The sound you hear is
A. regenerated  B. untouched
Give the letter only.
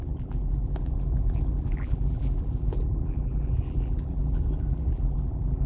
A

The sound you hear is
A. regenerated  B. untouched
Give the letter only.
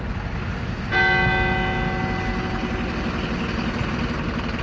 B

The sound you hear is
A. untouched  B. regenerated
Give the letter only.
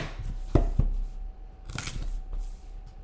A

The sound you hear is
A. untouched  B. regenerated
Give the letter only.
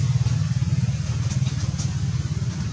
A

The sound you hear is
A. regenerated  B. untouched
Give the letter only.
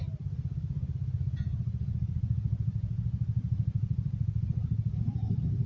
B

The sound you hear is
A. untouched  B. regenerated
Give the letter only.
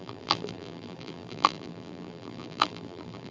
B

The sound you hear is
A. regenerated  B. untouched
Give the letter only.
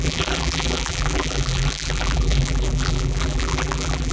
A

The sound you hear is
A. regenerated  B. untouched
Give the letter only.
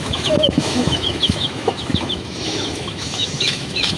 A